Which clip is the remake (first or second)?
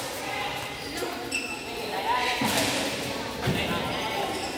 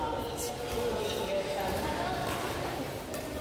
first